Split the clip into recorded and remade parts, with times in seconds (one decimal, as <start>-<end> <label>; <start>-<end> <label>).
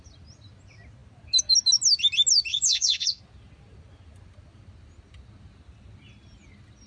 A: 0.0-2.5 recorded; 2.5-3.2 remade; 3.2-6.9 recorded